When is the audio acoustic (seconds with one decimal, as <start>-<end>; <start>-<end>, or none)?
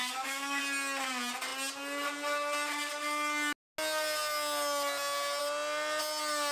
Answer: 0.6-6.5